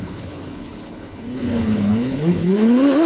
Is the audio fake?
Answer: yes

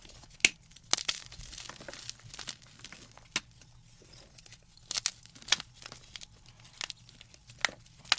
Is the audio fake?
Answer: no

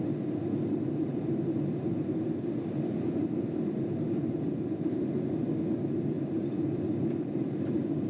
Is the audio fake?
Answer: no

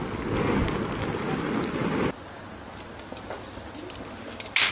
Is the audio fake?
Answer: no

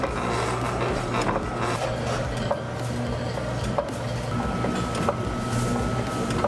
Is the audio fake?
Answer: no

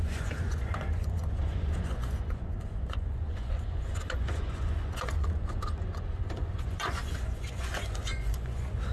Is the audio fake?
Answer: yes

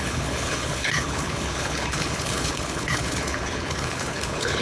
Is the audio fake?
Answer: yes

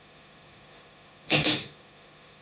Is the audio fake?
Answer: yes